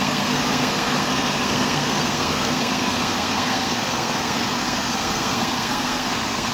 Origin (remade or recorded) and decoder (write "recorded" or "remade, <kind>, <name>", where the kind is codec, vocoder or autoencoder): remade, codec, SNAC